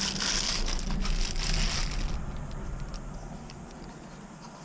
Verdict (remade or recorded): recorded